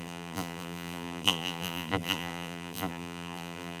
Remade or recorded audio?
remade